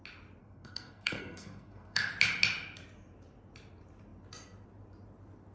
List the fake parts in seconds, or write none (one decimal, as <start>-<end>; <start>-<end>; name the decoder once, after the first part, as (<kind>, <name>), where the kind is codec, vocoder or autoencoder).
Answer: 0.4-2.1 (codec, SNAC)